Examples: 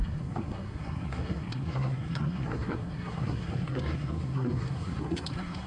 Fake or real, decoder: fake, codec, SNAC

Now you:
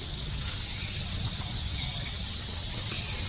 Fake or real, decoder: fake, vocoder, WaveNeXt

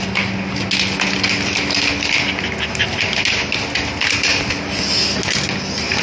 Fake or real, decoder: real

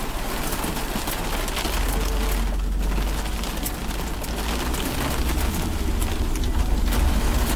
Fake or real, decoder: real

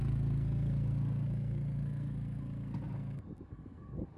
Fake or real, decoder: fake, codec, SNAC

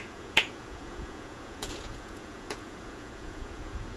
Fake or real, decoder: fake, vocoder, Vocos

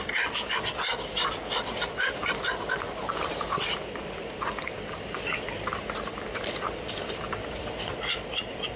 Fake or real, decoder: fake, vocoder, BigVGAN v2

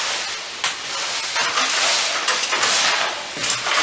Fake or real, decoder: real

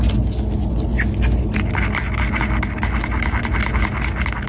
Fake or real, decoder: real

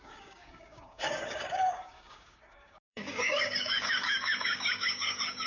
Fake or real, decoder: fake, codec, DAC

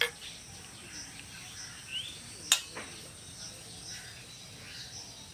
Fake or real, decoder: real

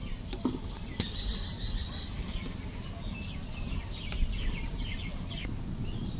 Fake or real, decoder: real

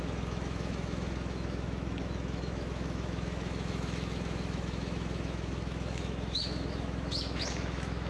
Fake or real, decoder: fake, autoencoder, DAC-VAE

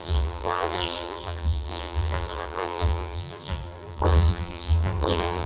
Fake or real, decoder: fake, vocoder, BigVGAN v2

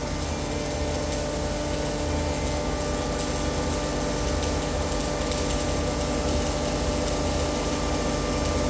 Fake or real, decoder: real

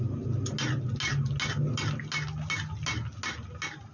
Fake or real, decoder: real